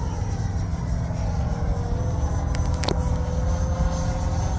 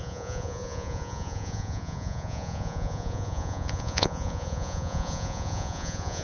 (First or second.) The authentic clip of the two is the first